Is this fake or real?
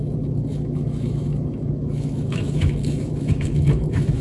fake